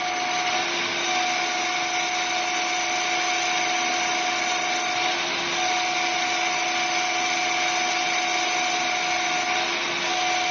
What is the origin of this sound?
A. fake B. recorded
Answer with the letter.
B